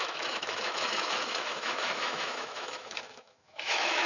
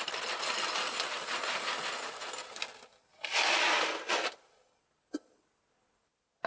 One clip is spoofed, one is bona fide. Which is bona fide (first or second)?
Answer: second